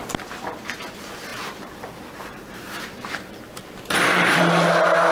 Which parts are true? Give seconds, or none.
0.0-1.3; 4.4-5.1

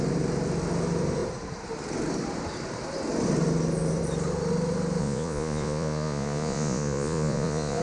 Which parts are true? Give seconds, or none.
0.0-5.0

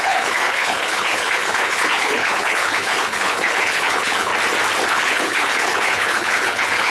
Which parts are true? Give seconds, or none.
4.3-4.9

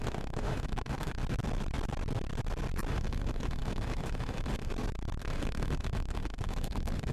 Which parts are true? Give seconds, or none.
1.2-2.9; 4.7-5.2

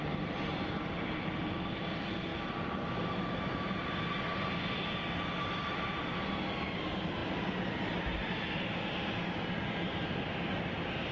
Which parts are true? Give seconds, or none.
0.0-11.1

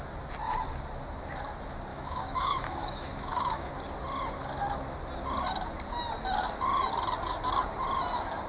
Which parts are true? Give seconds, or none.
0.0-1.9; 3.7-8.5

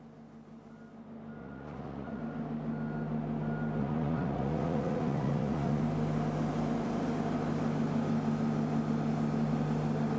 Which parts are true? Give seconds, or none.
0.0-1.4; 2.2-3.8; 5.8-10.2